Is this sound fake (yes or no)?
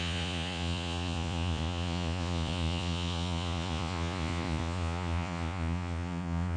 yes